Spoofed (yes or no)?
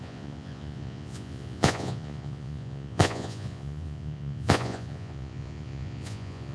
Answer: yes